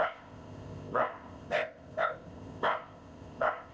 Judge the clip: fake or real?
fake